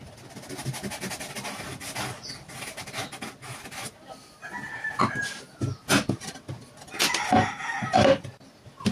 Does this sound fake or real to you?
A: real